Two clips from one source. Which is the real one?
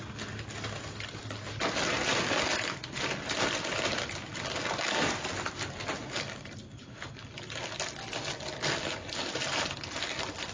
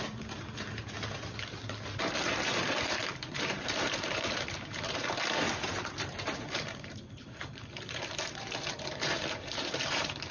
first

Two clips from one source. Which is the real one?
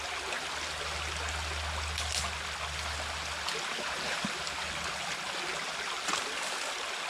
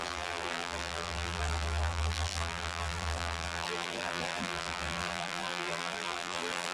first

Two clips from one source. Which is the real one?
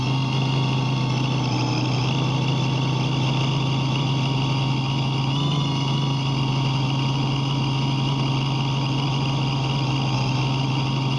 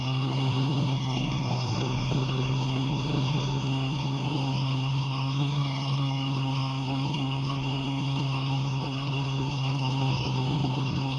first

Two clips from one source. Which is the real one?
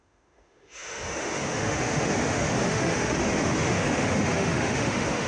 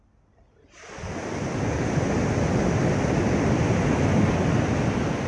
second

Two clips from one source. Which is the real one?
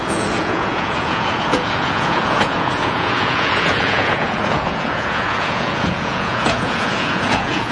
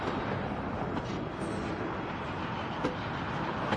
second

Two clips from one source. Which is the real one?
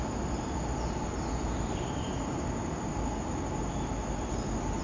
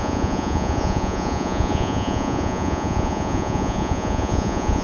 first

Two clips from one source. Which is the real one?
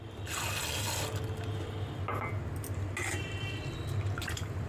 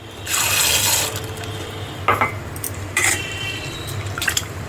first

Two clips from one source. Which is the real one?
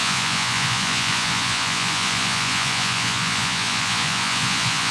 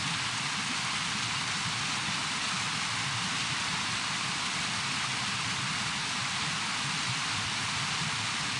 second